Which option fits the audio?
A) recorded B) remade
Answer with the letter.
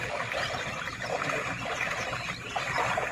B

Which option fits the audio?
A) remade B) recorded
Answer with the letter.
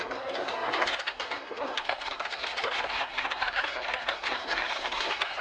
A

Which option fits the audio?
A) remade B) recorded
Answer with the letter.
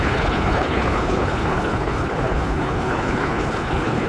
A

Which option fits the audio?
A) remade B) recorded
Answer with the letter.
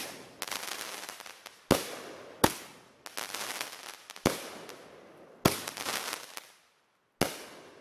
B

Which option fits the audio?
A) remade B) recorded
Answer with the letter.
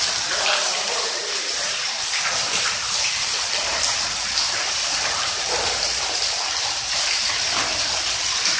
A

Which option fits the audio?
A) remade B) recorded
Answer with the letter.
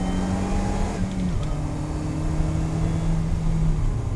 B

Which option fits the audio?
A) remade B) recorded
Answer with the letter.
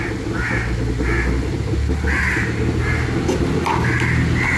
B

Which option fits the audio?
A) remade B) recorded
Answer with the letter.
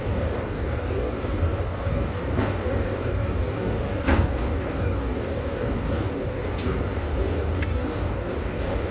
A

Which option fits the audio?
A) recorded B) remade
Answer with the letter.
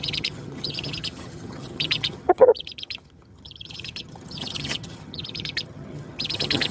B